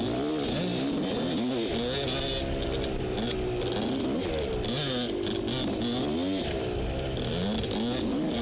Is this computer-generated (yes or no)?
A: no